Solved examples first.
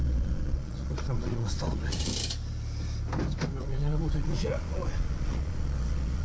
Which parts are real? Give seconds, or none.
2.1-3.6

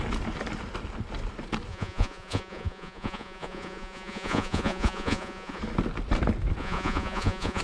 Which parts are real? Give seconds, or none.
0.0-1.7; 5.6-6.6

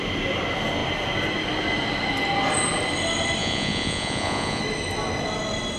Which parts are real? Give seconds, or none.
0.0-3.4; 4.6-5.8

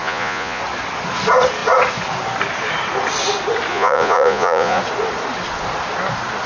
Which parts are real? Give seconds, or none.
0.6-3.7; 4.8-6.5

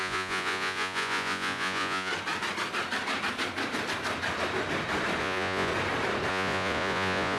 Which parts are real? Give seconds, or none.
2.1-5.2; 5.7-6.3